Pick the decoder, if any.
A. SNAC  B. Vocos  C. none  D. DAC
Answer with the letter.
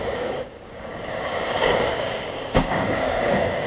D